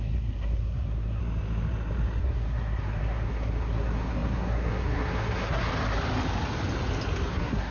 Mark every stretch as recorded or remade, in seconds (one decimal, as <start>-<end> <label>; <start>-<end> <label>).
0.0-1.2 remade; 1.2-2.2 recorded; 2.2-5.7 remade; 5.7-7.3 recorded; 7.3-7.7 remade